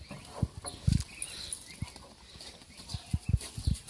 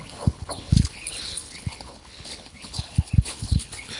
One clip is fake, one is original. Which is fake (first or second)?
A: second